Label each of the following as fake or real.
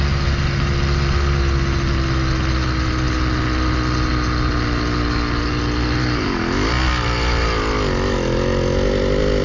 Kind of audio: real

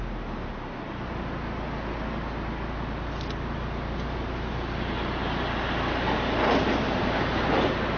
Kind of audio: real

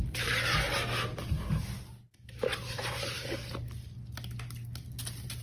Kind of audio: real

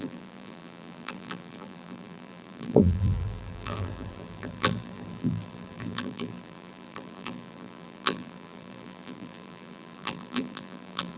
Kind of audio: fake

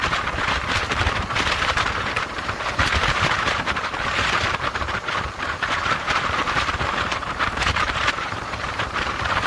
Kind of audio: fake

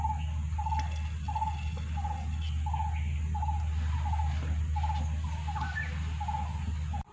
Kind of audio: real